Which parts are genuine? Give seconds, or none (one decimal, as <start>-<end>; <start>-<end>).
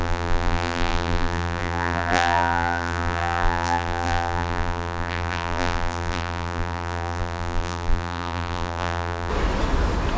9.3-10.2